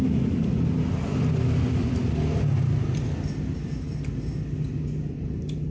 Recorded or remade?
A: recorded